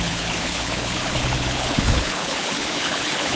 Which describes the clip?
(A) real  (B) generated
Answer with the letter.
B